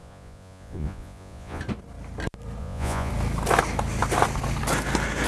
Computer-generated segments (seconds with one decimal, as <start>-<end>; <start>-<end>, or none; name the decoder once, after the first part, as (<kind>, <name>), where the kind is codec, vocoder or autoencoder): 0.0-1.6 (vocoder, Vocos); 2.6-3.1